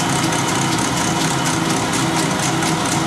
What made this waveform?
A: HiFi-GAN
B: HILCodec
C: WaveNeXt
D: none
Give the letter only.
D